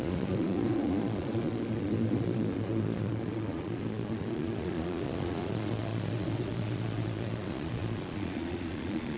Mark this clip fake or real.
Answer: fake